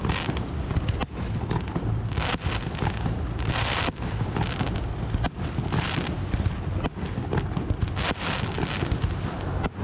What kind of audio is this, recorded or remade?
recorded